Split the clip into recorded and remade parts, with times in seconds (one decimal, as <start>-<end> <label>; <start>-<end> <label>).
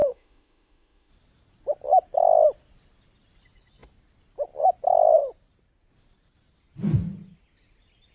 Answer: 0.0-1.1 remade; 1.1-8.1 recorded